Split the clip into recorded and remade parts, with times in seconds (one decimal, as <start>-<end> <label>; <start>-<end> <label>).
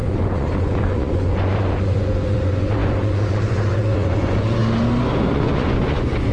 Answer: 0.0-4.6 remade; 4.6-5.3 recorded; 5.3-6.3 remade